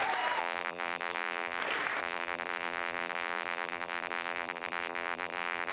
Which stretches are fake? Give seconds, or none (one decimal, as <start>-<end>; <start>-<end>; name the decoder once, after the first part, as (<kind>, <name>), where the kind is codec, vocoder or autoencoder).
0.4-1.6 (vocoder, BigVGAN v2); 2.0-5.7